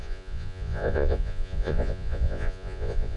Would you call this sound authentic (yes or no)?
no